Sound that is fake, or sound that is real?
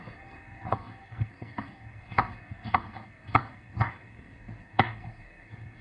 fake